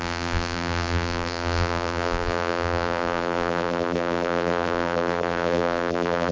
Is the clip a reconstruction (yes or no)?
yes